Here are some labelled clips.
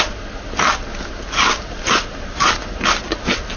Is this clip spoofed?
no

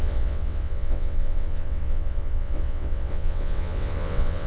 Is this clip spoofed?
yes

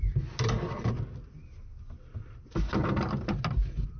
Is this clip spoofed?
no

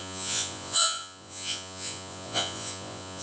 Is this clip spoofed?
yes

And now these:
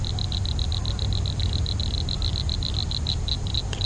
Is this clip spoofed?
no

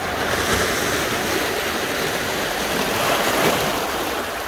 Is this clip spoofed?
no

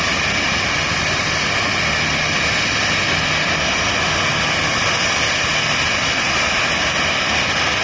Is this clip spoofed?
no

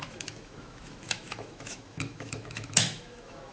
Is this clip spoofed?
yes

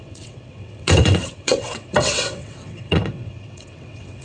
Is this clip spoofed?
yes